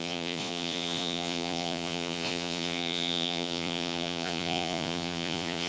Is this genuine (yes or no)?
no